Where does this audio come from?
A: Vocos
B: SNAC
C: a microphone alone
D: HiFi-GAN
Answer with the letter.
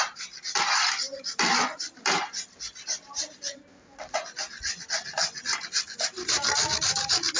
C